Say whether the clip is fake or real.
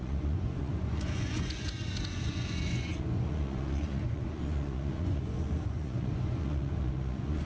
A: fake